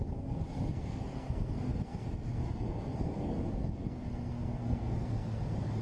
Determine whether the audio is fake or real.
fake